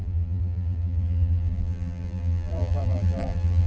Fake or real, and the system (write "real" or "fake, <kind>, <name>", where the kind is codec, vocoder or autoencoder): fake, vocoder, BigVGAN v2